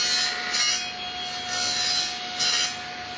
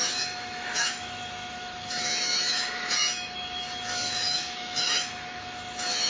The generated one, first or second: second